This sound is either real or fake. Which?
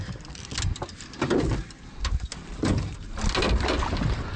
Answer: real